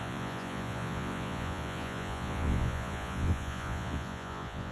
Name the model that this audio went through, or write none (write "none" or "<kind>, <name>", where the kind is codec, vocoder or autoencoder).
vocoder, Vocos